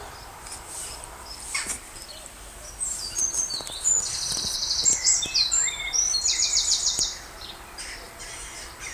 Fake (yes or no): yes